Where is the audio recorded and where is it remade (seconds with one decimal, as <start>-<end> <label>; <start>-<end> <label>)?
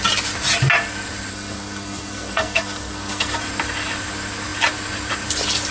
0.0-1.3 recorded; 1.3-3.4 remade; 3.4-5.7 recorded